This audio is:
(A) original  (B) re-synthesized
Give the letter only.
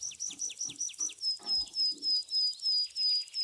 A